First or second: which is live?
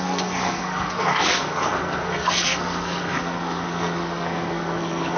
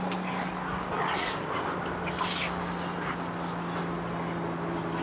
second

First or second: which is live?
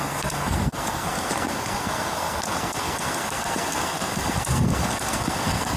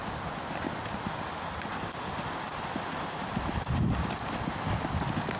second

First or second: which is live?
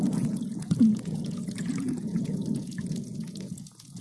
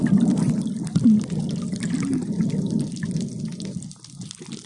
second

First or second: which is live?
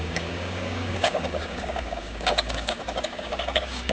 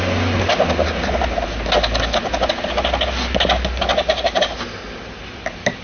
second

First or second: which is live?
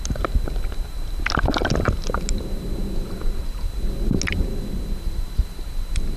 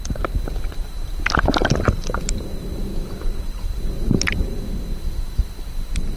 first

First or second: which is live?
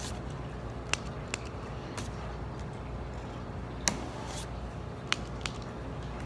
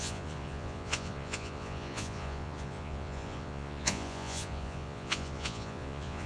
first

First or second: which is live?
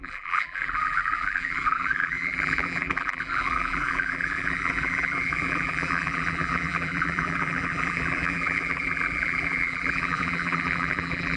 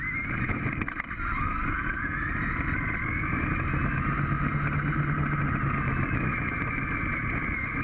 second